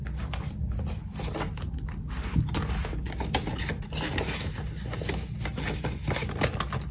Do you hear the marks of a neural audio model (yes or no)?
no